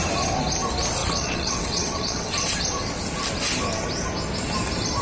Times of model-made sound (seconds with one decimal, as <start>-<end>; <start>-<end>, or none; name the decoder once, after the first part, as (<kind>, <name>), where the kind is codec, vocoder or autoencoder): 1.0-2.6 (vocoder, WaveNeXt)